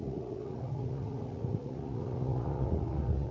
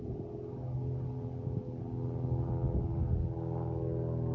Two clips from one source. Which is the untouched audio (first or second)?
second